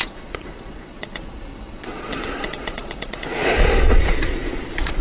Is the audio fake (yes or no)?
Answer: yes